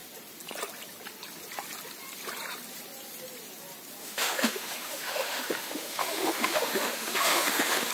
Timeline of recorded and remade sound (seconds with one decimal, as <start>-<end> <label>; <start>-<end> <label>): 0.0-4.0 recorded; 4.0-7.9 remade